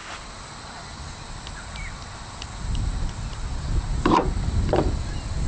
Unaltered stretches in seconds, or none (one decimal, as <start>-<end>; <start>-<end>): 0.0-5.5

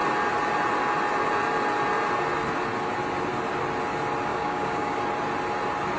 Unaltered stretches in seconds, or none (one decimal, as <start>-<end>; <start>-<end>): 0.0-4.3; 5.0-6.0